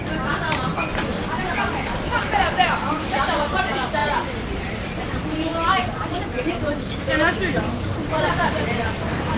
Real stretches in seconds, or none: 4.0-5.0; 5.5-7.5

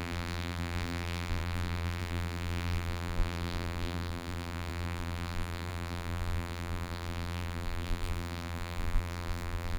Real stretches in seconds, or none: none

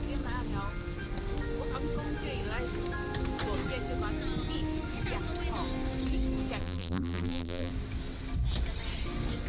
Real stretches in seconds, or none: 0.0-6.6; 7.7-9.5

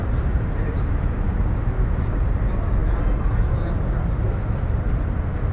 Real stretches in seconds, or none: 1.4-5.5

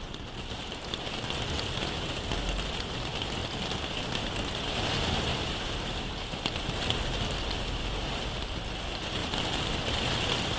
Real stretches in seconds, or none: 0.0-3.4; 4.2-5.3; 7.9-9.2; 10.0-10.6

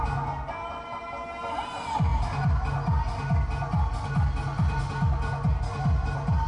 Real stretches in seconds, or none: 0.0-6.5